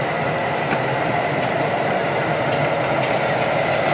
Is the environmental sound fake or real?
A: real